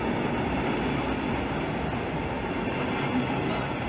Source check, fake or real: real